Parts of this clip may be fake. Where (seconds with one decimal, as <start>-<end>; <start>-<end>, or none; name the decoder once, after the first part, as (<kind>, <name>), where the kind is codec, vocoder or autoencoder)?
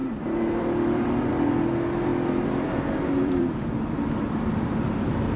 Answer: 0.0-1.3 (vocoder, BigVGAN v2); 2.1-3.7